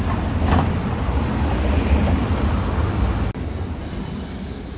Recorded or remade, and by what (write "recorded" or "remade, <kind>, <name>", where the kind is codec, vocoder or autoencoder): recorded